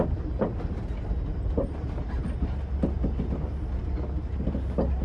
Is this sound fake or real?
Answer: real